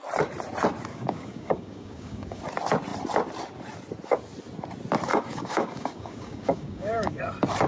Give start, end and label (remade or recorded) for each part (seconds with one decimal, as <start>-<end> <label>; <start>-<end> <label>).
0.0-0.9 recorded; 0.9-2.4 remade; 2.4-5.1 recorded; 5.1-7.2 remade; 7.2-7.7 recorded